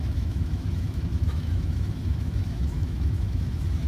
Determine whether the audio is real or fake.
fake